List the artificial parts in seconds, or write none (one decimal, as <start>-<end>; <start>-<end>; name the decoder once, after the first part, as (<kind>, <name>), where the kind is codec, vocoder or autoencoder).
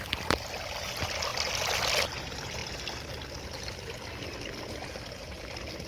none